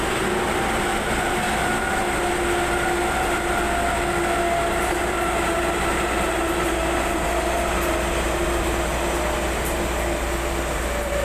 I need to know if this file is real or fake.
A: real